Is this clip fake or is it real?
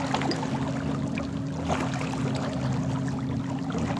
real